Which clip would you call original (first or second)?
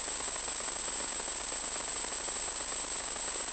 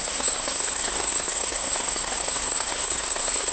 first